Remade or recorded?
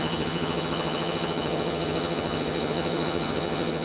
remade